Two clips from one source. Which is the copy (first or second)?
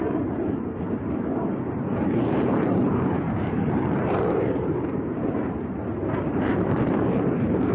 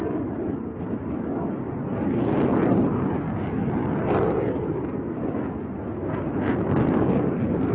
first